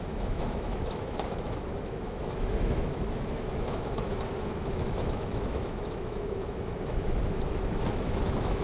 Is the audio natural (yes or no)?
no